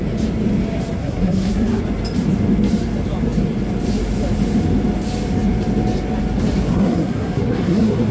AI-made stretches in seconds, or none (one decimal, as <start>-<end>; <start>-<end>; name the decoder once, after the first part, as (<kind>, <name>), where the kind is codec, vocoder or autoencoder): 1.0-1.8 (codec, SNAC); 6.7-8.1